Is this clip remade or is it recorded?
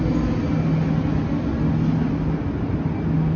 recorded